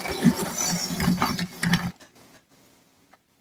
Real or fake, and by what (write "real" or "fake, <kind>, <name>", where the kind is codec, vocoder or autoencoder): real